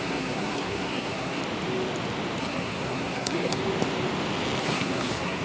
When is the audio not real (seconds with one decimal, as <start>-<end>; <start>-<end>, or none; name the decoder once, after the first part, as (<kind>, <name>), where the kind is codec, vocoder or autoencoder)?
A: 0.0-1.4 (codec, SNAC); 2.4-3.6; 4.6-5.4